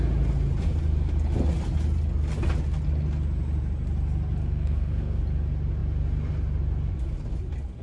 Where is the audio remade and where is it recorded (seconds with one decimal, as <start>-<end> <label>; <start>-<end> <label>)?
0.0-4.4 recorded; 4.4-5.2 remade; 5.2-7.8 recorded